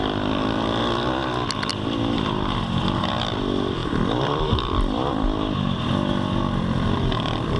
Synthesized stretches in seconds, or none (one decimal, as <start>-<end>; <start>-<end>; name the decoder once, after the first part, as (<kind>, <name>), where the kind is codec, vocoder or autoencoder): 3.8-5.6 (vocoder, BigVGAN v2)